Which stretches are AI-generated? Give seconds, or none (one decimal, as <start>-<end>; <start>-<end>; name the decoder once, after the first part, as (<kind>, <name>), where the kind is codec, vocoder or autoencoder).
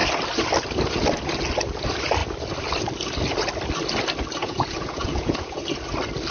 4.4-5.6 (vocoder, Vocos)